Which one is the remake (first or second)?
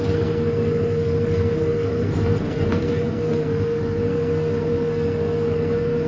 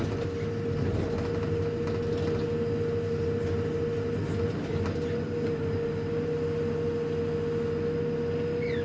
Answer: first